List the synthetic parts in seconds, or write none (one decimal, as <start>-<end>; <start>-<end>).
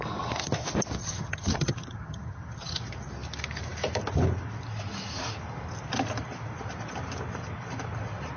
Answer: 1.0-2.8